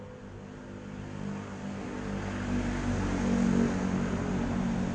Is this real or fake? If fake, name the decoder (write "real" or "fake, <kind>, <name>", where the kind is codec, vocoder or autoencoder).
real